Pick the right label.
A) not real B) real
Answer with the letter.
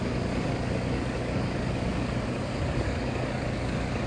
A